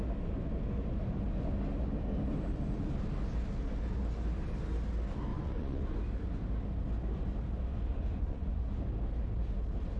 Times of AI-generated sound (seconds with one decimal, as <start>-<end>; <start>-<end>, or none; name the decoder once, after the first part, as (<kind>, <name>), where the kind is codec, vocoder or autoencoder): 5.3-6.0 (vocoder, Vocos); 7.7-8.6